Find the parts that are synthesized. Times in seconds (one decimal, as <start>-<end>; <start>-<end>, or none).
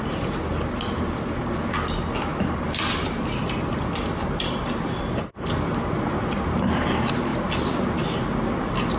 2.3-5.0